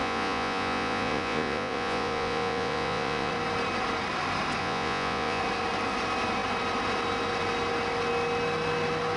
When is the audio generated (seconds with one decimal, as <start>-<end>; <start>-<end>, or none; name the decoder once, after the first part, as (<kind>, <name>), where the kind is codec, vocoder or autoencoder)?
0.0-3.3 (vocoder, Vocos); 4.6-5.4